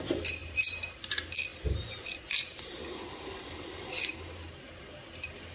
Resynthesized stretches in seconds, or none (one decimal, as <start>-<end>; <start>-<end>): 0.4-1.1; 1.5-4.8